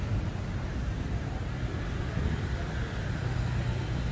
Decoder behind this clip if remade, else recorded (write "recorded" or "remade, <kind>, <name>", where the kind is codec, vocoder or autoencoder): recorded